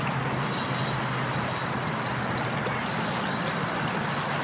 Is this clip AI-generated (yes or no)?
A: no